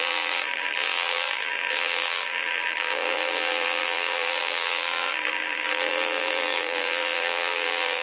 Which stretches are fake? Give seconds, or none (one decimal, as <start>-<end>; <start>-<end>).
0.0-8.0